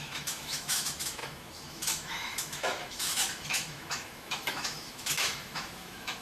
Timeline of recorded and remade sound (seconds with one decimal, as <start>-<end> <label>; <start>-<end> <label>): 0.0-6.2 remade